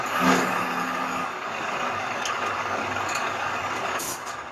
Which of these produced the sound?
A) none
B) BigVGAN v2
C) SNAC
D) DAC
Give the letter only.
D